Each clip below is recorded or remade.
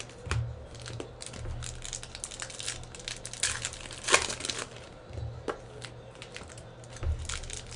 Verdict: recorded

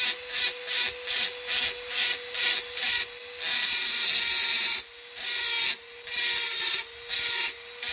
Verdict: recorded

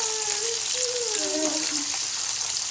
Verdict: recorded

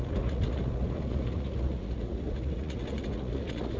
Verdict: remade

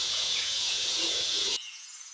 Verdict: remade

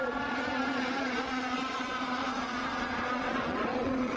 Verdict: remade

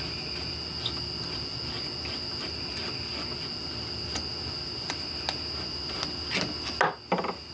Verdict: recorded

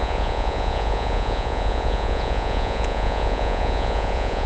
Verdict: remade